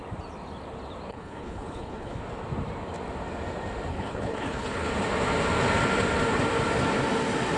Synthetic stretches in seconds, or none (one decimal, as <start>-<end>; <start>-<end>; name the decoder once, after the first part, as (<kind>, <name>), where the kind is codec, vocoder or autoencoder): 1.1-2.2 (codec, HILCodec); 3.9-4.9